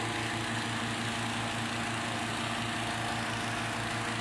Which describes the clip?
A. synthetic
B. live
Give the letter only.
B